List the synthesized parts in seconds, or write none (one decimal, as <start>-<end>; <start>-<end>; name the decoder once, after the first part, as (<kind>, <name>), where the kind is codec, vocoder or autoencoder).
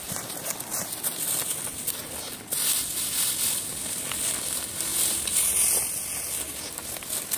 none